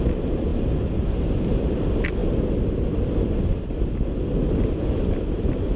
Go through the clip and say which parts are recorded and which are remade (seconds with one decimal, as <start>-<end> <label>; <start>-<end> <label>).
0.0-5.8 recorded